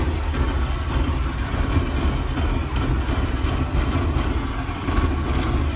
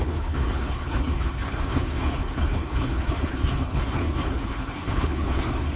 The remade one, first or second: second